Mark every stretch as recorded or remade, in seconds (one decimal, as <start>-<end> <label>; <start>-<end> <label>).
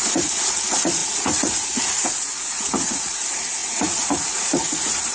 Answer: 0.0-5.1 remade